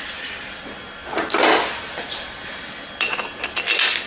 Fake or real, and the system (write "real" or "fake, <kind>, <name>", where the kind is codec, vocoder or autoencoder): real